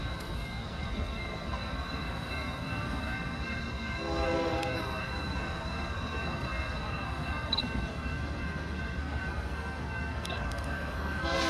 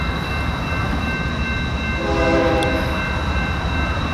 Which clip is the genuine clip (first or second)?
second